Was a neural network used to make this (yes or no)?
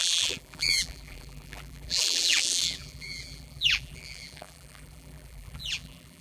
yes